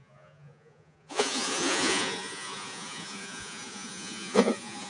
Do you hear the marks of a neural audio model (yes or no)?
yes